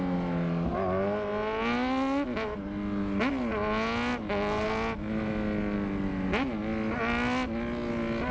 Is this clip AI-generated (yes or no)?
no